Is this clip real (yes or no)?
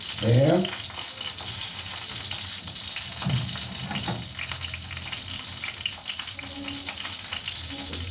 yes